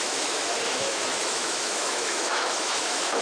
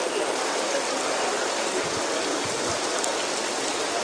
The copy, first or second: first